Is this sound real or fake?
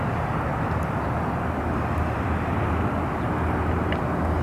real